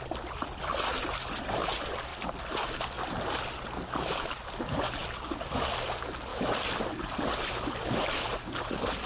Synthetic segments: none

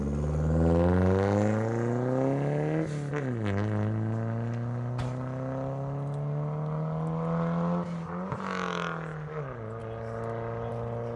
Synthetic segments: none

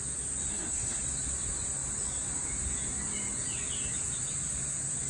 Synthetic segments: 0.5-1.0 (codec, SNAC)

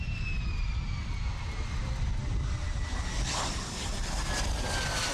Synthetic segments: none